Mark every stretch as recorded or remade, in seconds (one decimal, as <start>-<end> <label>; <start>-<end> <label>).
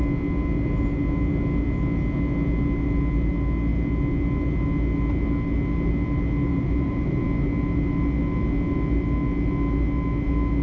0.0-6.5 recorded; 6.5-7.2 remade; 7.2-10.6 recorded